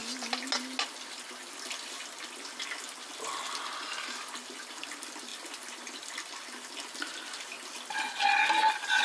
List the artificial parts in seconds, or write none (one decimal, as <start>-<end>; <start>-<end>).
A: none